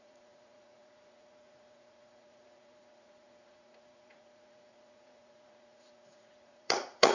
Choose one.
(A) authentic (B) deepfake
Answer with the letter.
B